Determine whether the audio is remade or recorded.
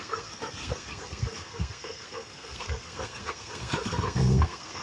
remade